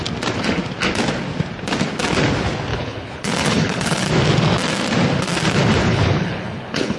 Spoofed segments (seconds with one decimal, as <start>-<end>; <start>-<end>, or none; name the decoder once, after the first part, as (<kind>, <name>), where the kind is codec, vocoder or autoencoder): 2.7-4.1 (codec, HILCodec); 5.8-7.0